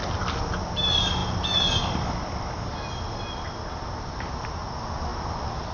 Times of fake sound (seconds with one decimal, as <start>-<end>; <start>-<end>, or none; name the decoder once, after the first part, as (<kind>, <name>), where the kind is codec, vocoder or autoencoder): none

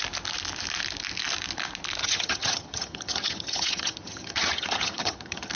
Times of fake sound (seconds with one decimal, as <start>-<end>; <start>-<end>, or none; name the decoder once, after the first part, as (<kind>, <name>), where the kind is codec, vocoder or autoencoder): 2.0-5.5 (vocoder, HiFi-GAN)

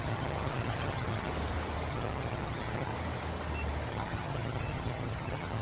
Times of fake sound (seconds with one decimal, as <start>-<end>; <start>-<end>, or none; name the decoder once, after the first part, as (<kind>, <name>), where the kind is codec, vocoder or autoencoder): 0.0-1.3 (vocoder, HiFi-GAN); 1.9-2.9; 3.9-5.6

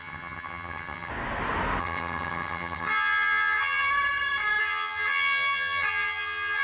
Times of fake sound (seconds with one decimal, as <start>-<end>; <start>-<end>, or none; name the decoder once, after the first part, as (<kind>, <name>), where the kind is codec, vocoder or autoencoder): 0.0-1.1 (vocoder, HiFi-GAN); 1.8-3.9; 4.6-6.6

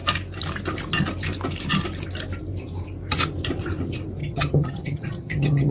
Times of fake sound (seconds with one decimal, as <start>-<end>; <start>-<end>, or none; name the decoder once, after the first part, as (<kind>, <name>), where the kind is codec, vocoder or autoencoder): 4.2-5.7 (vocoder, HiFi-GAN)

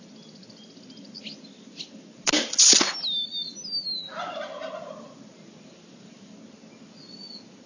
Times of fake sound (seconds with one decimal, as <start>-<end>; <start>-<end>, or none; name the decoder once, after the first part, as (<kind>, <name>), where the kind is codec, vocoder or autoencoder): none